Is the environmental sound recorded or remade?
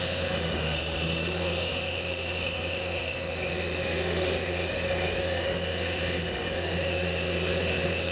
remade